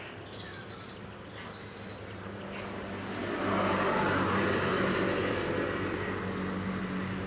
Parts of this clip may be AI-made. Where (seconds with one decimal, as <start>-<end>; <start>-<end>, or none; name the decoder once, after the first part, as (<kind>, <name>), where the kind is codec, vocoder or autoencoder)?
none